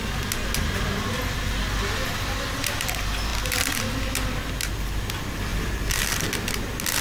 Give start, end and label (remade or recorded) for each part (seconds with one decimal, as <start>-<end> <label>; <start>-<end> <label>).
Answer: 0.0-5.5 recorded; 5.5-6.5 remade; 6.5-7.0 recorded